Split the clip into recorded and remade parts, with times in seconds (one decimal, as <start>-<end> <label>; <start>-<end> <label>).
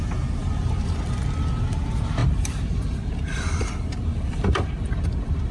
0.0-0.4 recorded; 0.4-1.6 remade; 1.6-2.2 recorded; 2.2-5.5 remade